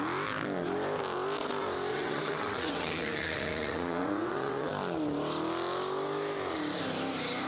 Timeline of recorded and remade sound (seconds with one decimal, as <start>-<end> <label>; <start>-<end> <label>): 0.0-1.9 recorded; 1.9-4.7 remade; 4.7-7.5 recorded